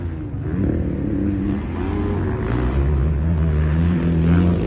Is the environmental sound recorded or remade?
recorded